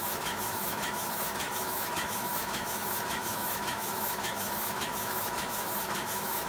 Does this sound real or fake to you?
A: fake